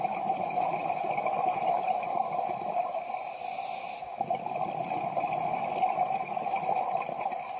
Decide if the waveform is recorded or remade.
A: recorded